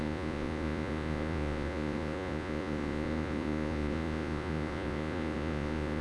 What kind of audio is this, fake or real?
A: fake